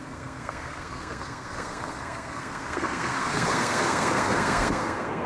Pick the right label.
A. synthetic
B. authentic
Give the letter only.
A